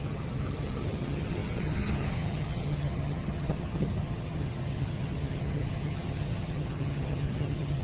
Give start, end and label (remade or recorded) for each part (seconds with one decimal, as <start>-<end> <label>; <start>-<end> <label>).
0.0-7.8 remade